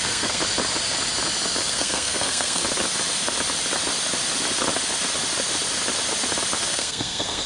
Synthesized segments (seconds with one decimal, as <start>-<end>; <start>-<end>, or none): 0.0-0.4; 1.7-2.6; 6.7-7.5